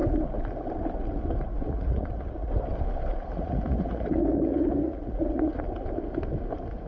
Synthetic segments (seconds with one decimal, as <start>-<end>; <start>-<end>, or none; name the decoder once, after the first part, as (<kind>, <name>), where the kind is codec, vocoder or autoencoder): 1.5-2.5 (vocoder, Vocos); 3.3-5.6